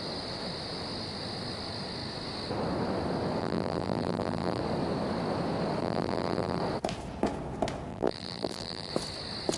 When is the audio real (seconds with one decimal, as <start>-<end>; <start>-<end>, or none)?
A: 0.0-3.4; 4.6-5.8; 6.6-7.9; 8.9-9.6